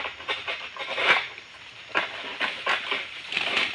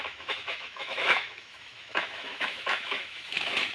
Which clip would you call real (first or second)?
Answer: first